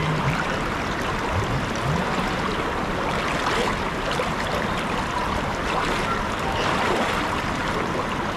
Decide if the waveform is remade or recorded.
recorded